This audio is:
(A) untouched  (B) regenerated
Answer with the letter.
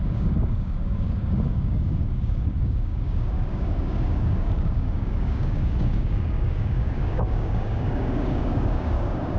B